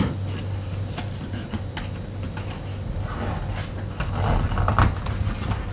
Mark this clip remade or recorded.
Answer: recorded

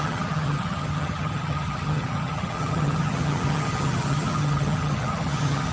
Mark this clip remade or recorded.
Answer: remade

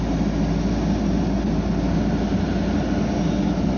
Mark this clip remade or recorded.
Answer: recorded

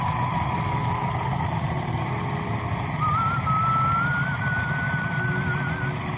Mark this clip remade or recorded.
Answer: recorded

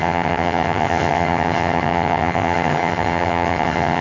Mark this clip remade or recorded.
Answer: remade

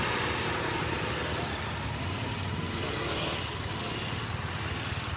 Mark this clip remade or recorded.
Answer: recorded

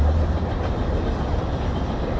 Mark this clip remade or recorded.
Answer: recorded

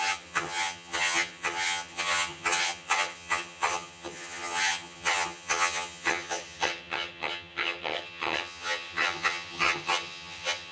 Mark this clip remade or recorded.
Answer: remade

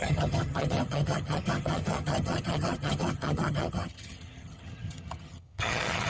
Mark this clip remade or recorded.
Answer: remade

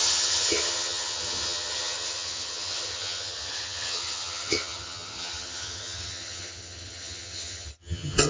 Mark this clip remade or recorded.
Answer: remade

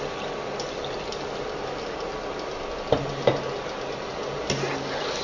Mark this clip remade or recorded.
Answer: recorded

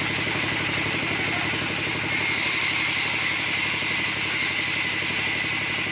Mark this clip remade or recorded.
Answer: recorded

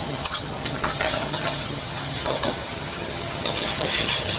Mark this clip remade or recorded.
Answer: remade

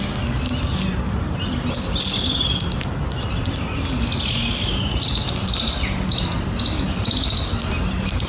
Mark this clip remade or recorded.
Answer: recorded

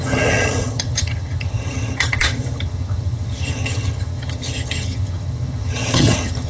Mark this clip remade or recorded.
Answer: remade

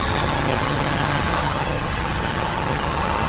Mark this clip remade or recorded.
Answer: remade